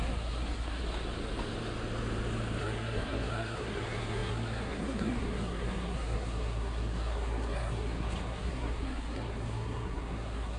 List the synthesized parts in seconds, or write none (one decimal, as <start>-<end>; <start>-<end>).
0.0-0.8; 2.6-10.6